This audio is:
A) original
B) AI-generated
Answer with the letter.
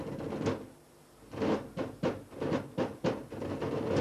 A